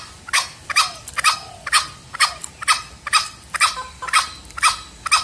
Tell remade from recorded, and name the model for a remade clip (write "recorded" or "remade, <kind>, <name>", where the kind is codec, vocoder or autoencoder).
recorded